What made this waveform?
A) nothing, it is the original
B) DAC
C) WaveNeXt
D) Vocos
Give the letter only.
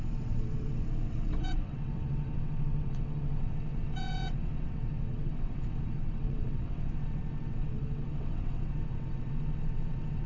C